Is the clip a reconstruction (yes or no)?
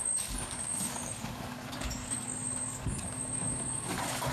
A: yes